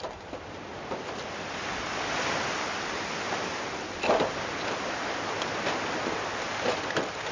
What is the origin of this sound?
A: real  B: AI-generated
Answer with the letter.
A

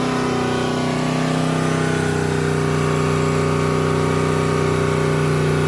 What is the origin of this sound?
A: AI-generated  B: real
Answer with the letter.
B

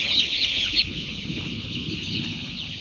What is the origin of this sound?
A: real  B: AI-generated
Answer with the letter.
B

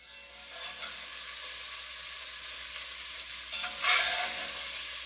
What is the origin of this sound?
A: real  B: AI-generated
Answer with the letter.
A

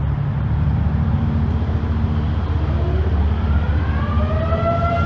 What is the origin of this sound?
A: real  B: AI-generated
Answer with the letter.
A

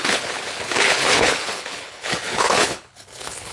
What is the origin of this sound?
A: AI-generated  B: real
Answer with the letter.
A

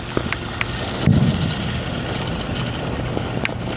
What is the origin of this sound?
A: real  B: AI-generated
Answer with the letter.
A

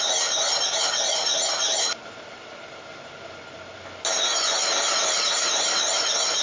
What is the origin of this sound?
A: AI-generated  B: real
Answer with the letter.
B